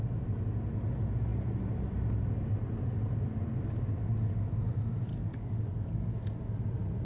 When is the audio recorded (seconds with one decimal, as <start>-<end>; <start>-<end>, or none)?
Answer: 0.0-5.1; 6.1-7.0